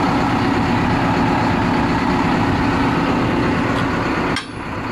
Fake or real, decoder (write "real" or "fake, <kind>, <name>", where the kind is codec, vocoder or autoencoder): real